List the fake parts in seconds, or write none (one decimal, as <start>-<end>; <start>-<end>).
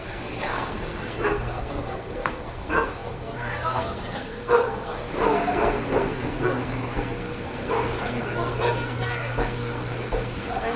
0.0-10.8